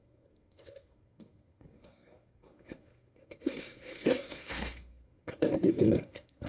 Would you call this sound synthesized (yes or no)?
yes